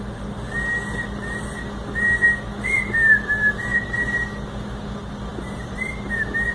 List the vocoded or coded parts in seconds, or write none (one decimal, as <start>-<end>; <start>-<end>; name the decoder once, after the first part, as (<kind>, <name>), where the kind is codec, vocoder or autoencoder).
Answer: 5.3-6.1 (vocoder, BigVGAN v2)